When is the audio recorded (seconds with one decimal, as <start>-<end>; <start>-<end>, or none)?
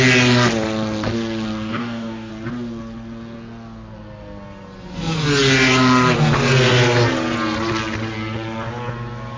0.0-1.7; 2.3-9.4